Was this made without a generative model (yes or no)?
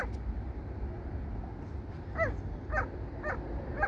yes